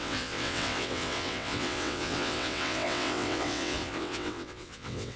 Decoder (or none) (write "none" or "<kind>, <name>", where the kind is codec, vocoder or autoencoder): vocoder, WaveNeXt